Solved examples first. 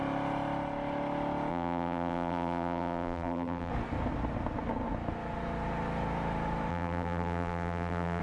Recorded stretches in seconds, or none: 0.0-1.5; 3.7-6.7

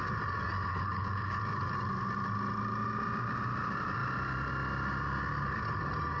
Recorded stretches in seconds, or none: 0.0-0.7; 1.4-6.2

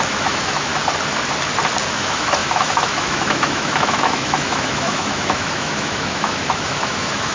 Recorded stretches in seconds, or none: 0.7-1.9

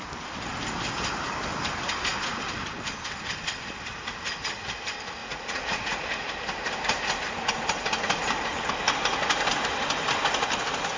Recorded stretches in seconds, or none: 0.0-5.2; 6.3-11.0

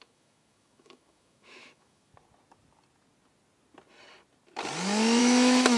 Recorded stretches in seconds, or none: 2.1-5.2

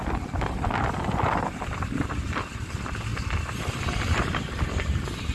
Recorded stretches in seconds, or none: 0.0-5.3

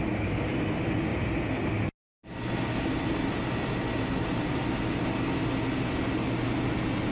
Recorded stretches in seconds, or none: 0.0-7.1